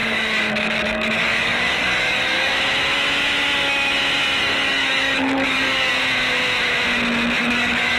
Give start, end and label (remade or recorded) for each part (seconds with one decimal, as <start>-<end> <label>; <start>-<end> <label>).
0.0-2.5 remade; 2.5-4.4 recorded; 4.4-5.9 remade; 5.9-7.4 recorded; 7.4-8.0 remade